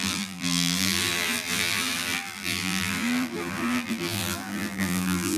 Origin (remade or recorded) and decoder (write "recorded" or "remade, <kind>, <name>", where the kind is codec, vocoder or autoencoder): remade, vocoder, BigVGAN v2